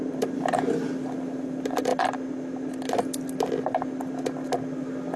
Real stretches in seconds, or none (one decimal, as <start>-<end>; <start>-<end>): 0.0-5.2